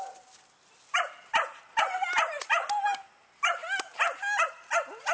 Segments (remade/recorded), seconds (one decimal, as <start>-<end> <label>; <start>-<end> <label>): 0.0-5.1 recorded